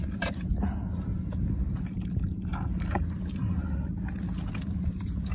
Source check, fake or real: real